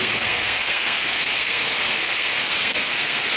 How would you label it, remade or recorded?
remade